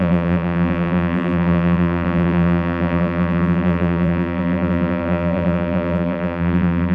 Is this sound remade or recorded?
remade